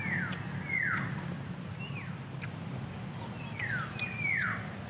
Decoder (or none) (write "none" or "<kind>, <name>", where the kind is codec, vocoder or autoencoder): none